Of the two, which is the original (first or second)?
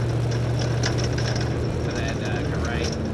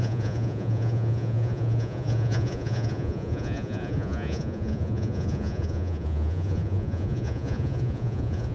first